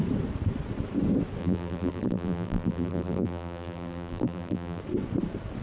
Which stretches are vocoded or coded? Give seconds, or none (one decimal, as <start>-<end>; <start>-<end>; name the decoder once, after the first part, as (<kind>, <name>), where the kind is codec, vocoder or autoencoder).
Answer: 1.4-4.8 (vocoder, BigVGAN v2)